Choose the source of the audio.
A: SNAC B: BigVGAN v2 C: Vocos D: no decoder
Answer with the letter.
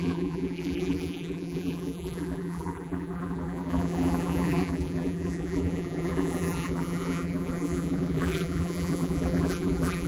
B